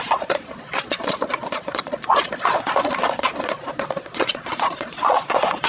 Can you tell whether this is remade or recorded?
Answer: remade